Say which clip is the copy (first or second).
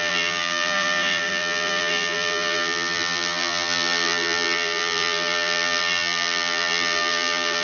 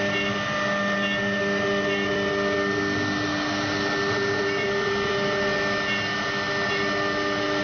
first